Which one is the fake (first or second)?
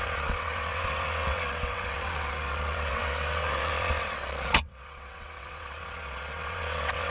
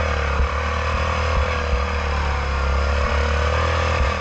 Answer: first